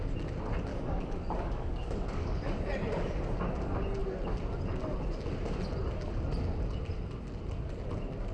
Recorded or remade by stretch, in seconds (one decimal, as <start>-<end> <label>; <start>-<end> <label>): 0.0-0.7 recorded; 0.7-2.4 remade; 2.4-8.3 recorded